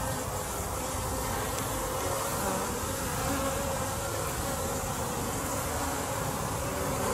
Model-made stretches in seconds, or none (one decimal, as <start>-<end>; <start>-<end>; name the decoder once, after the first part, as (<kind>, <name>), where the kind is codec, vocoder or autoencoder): none